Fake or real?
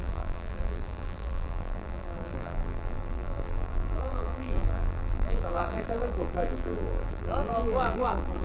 fake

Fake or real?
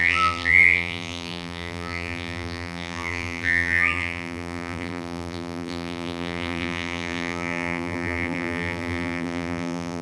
fake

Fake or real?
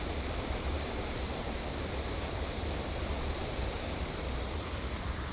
fake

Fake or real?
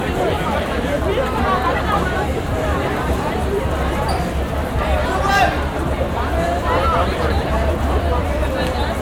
fake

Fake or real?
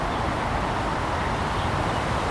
real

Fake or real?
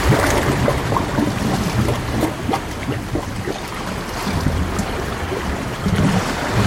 real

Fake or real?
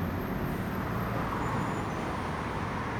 real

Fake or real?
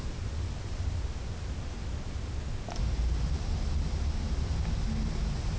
real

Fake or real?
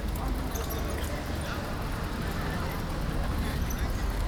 real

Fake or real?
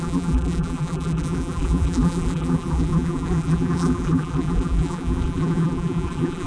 fake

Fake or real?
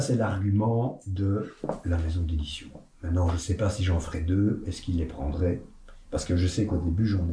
real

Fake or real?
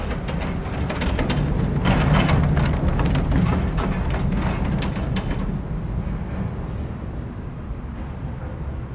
real